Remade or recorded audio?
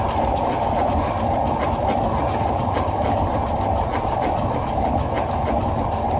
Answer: recorded